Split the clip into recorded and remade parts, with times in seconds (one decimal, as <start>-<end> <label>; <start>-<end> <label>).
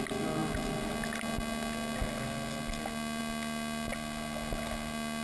0.0-5.2 recorded